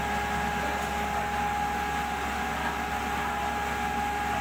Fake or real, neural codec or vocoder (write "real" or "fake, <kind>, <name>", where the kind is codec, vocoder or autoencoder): real